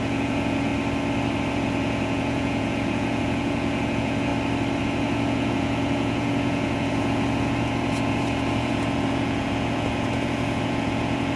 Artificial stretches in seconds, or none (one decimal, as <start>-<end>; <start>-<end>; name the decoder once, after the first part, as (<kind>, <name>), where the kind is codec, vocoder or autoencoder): 0.0-0.7 (vocoder, Vocos); 1.5-4.3; 4.8-11.4